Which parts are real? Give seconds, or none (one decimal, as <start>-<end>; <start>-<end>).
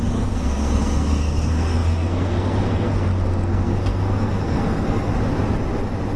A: 5.1-6.2